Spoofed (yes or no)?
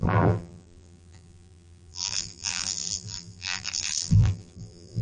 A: yes